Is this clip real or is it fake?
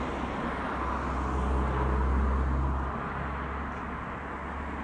real